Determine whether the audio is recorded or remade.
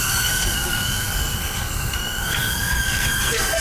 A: remade